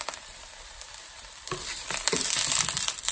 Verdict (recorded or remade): remade